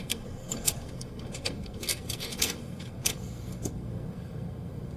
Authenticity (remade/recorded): remade